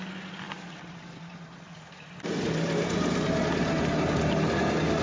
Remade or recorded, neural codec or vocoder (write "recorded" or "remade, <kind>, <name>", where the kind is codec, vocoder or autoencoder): recorded